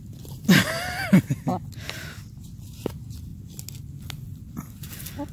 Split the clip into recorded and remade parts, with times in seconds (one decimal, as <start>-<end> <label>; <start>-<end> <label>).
0.0-1.5 remade; 1.5-2.6 recorded; 2.6-3.3 remade; 3.3-5.3 recorded